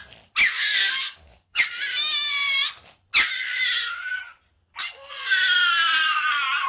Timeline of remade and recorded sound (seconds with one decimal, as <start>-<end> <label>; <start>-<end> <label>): 0.0-0.7 recorded; 0.7-1.6 remade; 1.6-6.7 recorded